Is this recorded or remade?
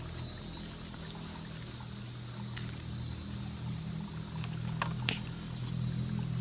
recorded